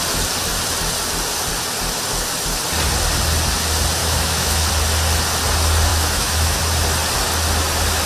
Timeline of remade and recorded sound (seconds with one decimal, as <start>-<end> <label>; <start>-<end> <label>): 0.0-4.0 recorded; 4.0-4.7 remade; 4.7-5.9 recorded; 5.9-6.6 remade; 6.6-8.1 recorded